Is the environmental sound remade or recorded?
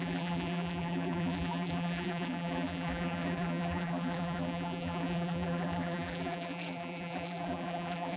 remade